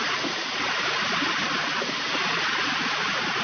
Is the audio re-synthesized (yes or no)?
no